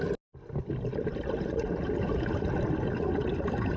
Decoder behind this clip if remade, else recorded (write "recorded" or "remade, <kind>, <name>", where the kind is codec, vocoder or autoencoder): recorded